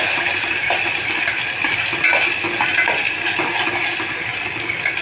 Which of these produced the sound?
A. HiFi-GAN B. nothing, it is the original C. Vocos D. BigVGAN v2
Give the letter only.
B